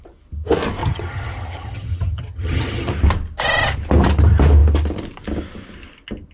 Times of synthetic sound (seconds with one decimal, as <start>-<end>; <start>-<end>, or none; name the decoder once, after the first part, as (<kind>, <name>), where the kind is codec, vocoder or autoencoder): 0.8-2.9 (vocoder, HiFi-GAN)